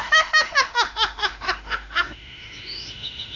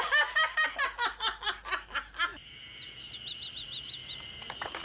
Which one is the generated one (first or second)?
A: first